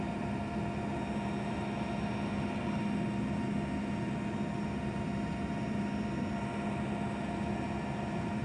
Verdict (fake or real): real